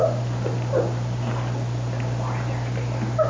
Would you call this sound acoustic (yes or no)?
yes